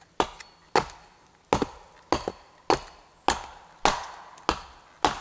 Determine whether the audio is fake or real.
real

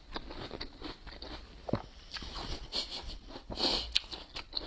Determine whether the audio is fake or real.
real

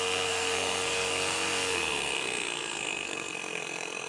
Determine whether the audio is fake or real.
fake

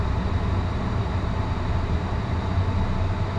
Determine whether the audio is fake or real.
real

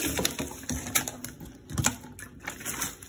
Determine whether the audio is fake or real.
real